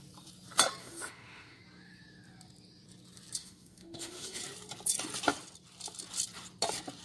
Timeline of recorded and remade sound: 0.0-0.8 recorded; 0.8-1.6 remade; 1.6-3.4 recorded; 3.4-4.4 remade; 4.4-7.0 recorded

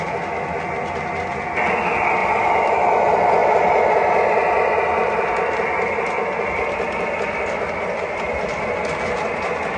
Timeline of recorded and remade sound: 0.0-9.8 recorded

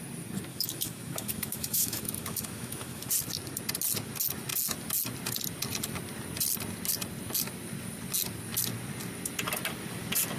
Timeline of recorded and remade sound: 0.0-0.5 recorded; 0.5-3.1 remade; 3.1-10.4 recorded